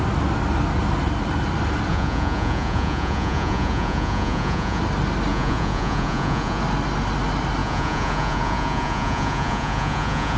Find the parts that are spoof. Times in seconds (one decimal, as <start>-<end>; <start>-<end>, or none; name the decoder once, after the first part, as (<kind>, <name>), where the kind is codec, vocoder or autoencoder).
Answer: 1.9-4.8 (vocoder, Vocos); 5.3-6.6; 7.6-10.4